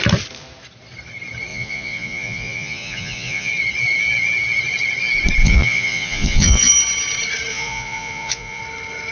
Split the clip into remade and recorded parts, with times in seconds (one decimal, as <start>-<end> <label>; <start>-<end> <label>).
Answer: 0.0-1.5 recorded; 1.5-3.5 remade; 3.5-5.4 recorded; 5.4-6.7 remade; 6.7-7.5 recorded; 7.5-8.6 remade; 8.6-9.1 recorded